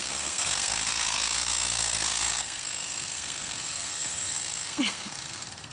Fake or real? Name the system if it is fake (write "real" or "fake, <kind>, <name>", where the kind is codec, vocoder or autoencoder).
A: fake, codec, SNAC